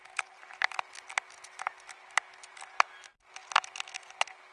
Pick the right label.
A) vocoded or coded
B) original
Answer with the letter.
B